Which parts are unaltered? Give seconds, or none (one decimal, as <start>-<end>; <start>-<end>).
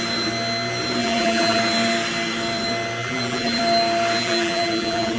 0.0-1.0; 1.6-3.0; 3.6-4.2